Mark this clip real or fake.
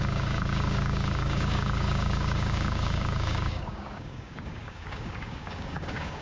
fake